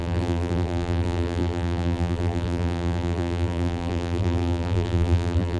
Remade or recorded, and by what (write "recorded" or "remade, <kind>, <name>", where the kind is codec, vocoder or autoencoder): remade, vocoder, BigVGAN v2